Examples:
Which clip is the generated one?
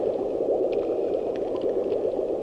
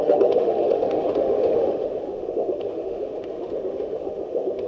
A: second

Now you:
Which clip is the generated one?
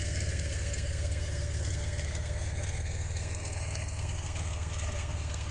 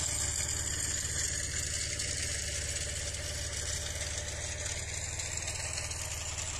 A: first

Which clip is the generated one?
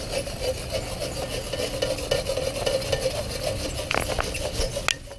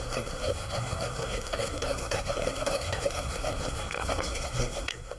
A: second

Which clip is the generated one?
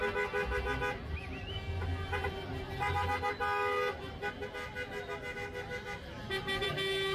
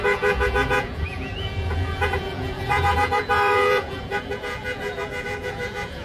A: second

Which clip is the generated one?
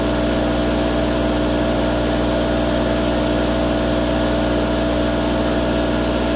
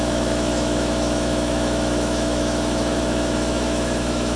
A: second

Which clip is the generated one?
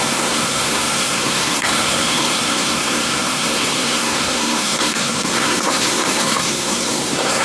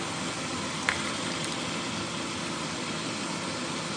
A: first